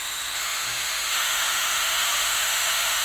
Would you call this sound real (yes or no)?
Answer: no